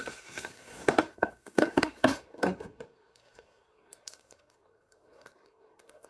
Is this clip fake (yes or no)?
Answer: yes